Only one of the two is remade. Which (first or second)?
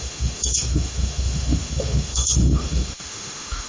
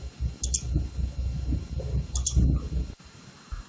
first